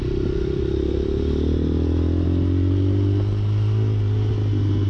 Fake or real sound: real